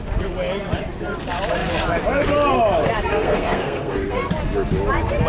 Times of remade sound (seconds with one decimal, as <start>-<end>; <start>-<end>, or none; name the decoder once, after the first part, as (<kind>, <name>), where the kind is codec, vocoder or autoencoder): 3.1-4.3 (codec, SNAC)